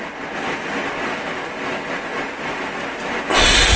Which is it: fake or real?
real